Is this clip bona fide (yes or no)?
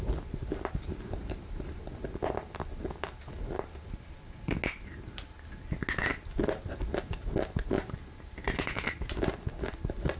yes